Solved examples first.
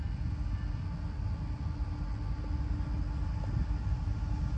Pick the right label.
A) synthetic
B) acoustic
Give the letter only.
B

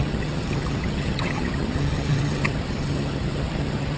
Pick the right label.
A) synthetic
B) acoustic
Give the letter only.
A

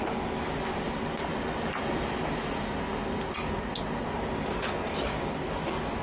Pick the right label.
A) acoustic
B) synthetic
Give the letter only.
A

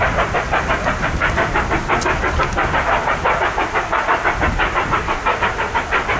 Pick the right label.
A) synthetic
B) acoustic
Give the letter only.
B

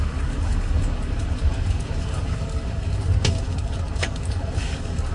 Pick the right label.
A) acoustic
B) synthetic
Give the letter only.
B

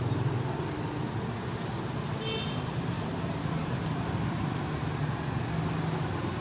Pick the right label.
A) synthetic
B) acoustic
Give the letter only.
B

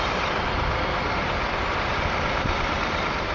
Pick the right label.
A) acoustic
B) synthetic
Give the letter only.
A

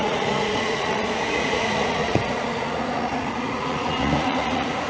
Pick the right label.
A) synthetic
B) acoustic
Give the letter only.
A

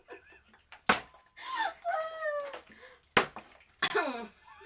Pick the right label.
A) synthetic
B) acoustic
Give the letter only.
B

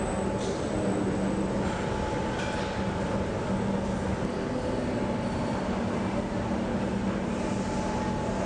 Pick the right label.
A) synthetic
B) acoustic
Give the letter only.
B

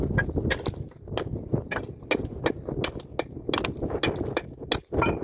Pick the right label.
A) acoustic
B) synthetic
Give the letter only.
A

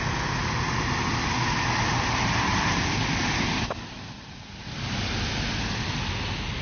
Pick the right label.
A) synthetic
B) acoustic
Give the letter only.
B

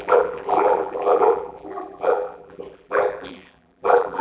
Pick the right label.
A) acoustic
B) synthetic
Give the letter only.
B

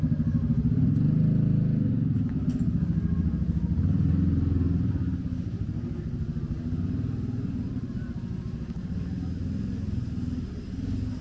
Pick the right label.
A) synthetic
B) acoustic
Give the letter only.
B